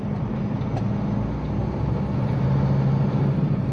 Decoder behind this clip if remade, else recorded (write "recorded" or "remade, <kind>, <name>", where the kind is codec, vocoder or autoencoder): recorded